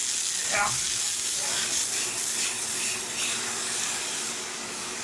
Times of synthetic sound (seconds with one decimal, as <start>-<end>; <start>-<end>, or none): 0.7-1.8; 3.4-5.0